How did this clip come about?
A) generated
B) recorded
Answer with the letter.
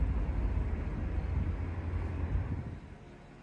B